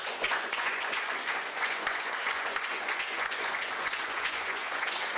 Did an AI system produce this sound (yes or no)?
yes